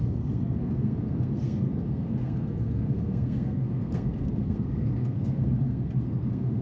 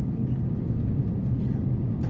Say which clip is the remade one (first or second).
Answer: first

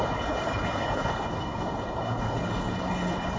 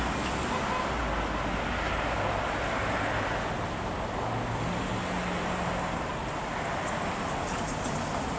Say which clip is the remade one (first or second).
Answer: first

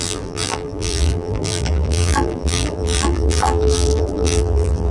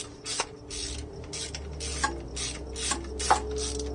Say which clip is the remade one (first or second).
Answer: first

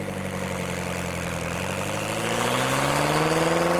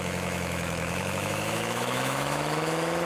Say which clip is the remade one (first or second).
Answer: second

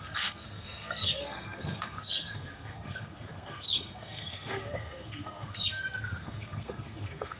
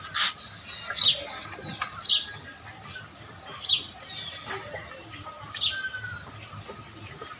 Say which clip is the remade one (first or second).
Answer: first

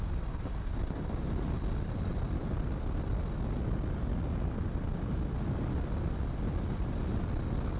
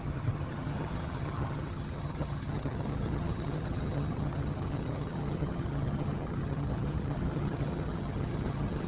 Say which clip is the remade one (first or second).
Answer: second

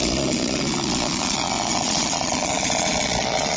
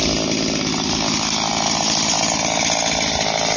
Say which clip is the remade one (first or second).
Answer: first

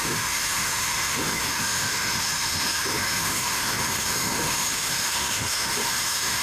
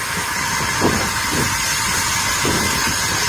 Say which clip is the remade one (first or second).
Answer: first